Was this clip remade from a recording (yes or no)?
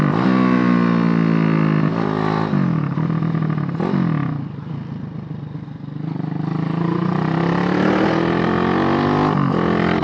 no